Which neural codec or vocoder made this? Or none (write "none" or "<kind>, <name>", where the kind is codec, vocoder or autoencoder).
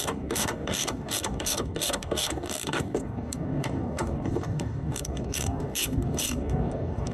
codec, DAC